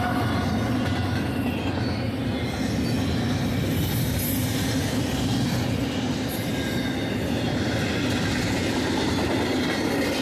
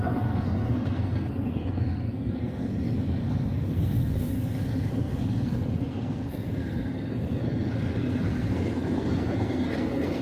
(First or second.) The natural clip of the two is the first